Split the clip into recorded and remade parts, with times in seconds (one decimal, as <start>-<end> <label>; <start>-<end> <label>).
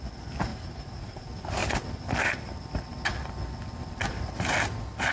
0.0-0.5 recorded; 0.5-1.2 remade; 1.2-5.1 recorded